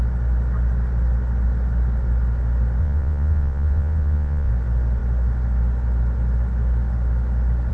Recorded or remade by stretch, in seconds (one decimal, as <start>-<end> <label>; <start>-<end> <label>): 0.0-2.8 recorded; 2.8-4.5 remade; 4.5-7.7 recorded